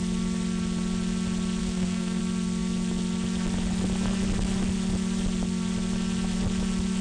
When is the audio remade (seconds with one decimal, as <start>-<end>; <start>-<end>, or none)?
1.6-2.2

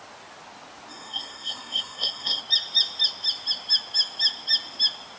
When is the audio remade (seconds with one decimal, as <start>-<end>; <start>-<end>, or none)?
0.9-2.4

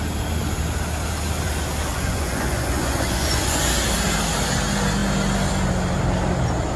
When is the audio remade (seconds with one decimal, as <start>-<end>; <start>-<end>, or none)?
1.9-3.6

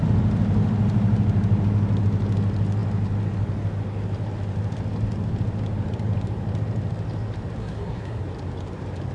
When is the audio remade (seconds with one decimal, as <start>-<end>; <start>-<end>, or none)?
7.6-8.2